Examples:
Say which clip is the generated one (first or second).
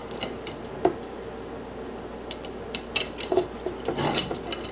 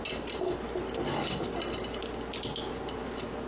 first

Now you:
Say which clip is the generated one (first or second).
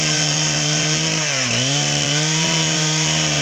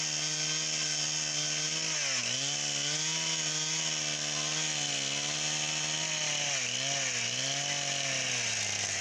first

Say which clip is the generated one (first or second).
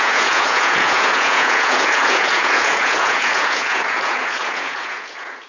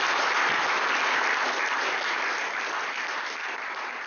first